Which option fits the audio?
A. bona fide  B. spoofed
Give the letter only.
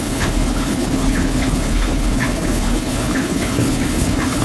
B